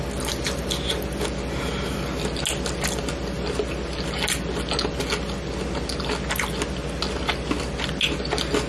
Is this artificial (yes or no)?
no